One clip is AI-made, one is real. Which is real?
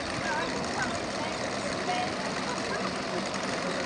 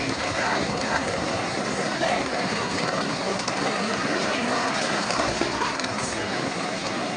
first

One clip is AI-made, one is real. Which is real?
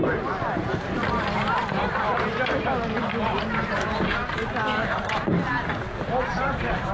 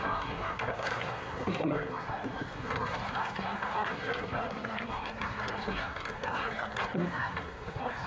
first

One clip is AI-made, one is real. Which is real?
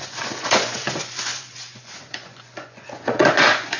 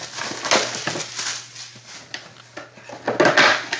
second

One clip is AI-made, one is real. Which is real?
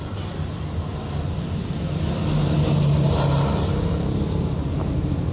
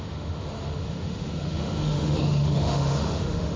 first